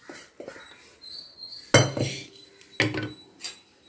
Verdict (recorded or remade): recorded